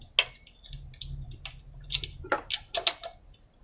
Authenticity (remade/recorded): recorded